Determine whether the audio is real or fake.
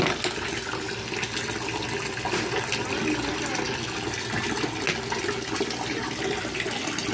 real